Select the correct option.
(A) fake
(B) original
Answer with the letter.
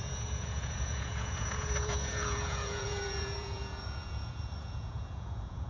A